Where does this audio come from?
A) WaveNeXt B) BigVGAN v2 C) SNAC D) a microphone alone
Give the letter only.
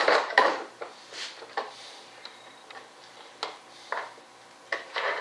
B